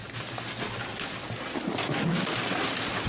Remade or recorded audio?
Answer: recorded